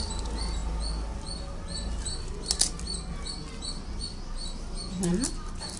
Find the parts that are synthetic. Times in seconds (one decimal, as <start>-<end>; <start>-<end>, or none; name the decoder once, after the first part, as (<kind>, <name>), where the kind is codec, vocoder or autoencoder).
none